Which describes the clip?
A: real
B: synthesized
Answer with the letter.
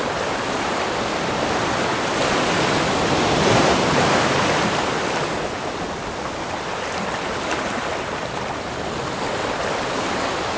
A